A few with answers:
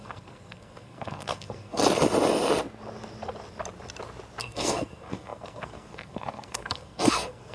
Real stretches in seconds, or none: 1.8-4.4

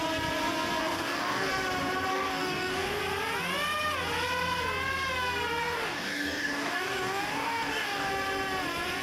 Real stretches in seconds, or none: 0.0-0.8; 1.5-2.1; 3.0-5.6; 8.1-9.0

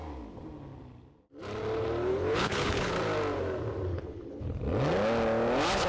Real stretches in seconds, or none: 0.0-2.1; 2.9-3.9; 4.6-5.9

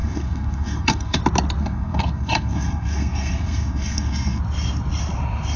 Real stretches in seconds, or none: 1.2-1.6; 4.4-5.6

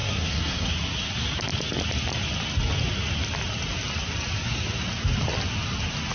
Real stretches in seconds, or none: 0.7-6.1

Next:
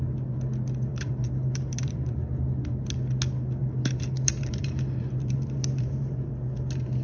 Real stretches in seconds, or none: 0.0-0.9; 2.3-3.6; 6.3-7.0

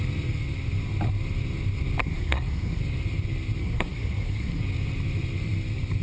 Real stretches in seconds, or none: 0.0-2.0; 2.8-3.6; 4.6-6.0